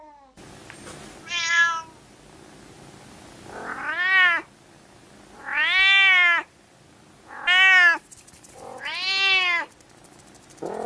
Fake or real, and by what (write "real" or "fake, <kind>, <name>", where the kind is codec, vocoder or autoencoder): real